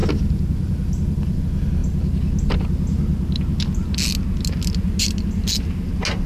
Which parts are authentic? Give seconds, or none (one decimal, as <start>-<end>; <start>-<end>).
1.4-6.3